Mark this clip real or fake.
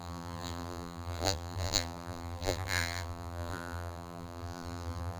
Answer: fake